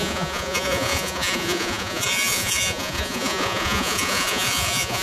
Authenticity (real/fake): fake